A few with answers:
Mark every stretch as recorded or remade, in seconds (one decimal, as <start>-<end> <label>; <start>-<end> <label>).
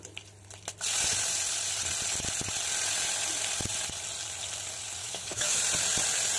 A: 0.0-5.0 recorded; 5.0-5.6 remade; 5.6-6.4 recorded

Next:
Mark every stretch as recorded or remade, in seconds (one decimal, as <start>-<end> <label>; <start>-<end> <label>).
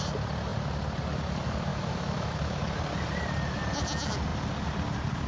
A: 0.0-1.7 recorded; 1.7-2.6 remade; 2.6-5.3 recorded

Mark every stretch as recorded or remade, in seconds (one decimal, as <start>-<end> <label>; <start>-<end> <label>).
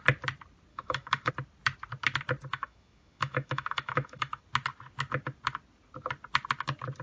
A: 0.0-0.7 recorded; 0.7-1.3 remade; 1.3-2.5 recorded; 2.5-4.4 remade; 4.4-7.0 recorded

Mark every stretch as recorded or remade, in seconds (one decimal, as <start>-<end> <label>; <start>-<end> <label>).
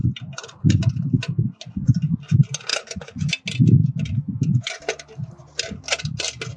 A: 0.0-2.7 recorded; 2.7-3.3 remade; 3.3-3.8 recorded; 3.8-4.7 remade; 4.7-6.6 recorded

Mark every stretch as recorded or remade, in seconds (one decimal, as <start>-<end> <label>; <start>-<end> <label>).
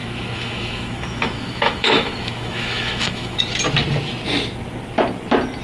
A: 0.0-3.4 remade; 3.4-5.6 recorded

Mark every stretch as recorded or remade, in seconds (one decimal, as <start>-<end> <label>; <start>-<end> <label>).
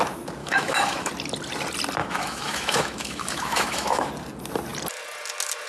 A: 0.0-0.4 recorded; 0.4-1.1 remade; 1.1-2.0 recorded; 2.0-4.1 remade; 4.1-5.7 recorded